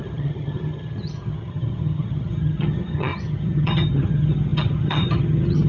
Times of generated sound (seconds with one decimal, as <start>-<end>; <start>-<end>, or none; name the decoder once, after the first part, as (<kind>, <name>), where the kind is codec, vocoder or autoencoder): 0.0-5.7 (vocoder, HiFi-GAN)